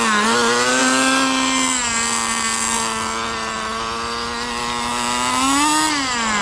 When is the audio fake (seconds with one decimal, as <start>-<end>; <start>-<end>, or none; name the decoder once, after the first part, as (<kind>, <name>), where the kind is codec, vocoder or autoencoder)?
none